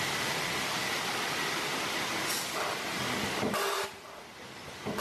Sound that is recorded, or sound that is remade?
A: recorded